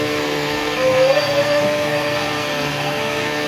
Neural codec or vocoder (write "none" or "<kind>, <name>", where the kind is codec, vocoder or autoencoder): codec, SNAC